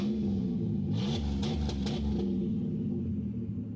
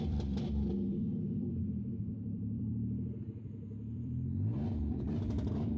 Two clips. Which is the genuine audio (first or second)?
first